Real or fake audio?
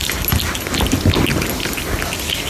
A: real